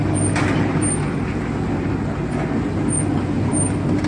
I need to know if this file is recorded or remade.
recorded